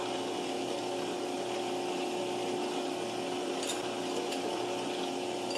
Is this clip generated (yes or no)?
no